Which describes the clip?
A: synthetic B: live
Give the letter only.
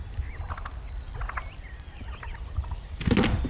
B